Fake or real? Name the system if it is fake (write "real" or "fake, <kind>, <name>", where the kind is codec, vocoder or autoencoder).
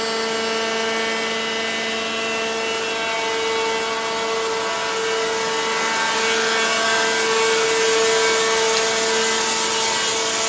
real